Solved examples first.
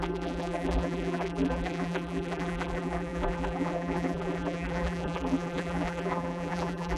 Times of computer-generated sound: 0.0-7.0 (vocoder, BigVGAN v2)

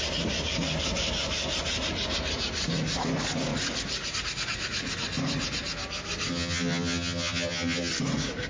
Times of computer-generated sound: 6.3-7.9 (vocoder, HiFi-GAN)

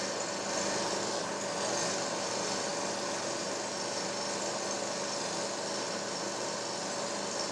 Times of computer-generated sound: none

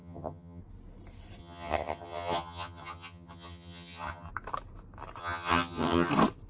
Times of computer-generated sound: 0.0-0.6 (vocoder, HiFi-GAN); 1.4-4.3; 5.2-6.1

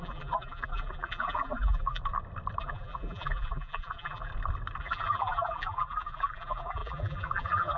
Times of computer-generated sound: 0.0-2.0 (vocoder, BigVGAN v2); 2.6-4.3; 4.8-7.8

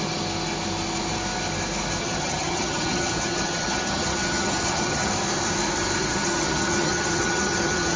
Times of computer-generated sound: 2.0-5.1 (vocoder, HiFi-GAN); 6.0-8.0

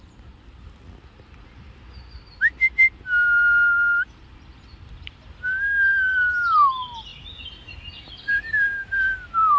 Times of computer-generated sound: 7.1-8.1 (vocoder, BigVGAN v2)